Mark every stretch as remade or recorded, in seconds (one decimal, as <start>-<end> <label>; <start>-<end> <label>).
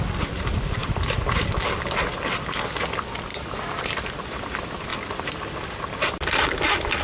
0.0-3.3 recorded; 3.3-3.8 remade; 3.8-7.0 recorded